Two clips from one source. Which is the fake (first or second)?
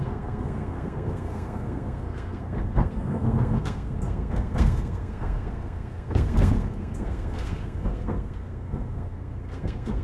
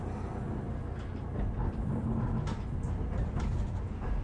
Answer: first